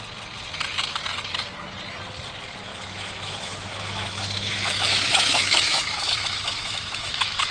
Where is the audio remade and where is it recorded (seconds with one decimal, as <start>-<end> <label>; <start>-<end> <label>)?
0.0-2.7 recorded; 2.7-7.5 remade